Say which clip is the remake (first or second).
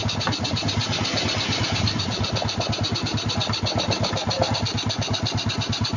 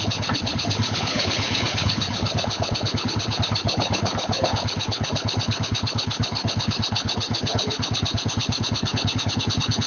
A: second